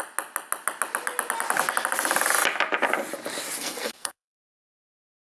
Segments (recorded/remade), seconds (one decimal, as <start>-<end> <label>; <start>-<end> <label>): 0.0-3.6 recorded; 3.6-4.4 remade; 4.4-5.3 recorded